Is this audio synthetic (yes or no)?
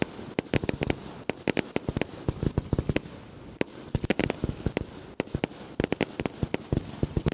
no